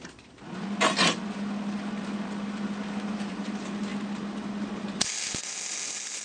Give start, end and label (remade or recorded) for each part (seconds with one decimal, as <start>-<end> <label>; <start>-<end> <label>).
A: 0.0-6.2 recorded